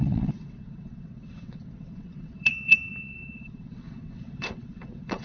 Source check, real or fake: fake